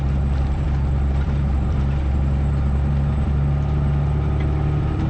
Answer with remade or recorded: remade